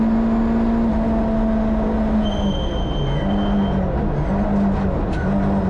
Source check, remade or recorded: recorded